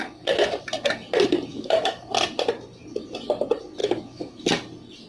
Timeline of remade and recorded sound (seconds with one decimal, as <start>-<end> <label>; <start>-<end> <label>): 0.0-1.5 recorded; 1.5-2.1 remade; 2.1-3.8 recorded; 3.8-4.4 remade; 4.4-5.1 recorded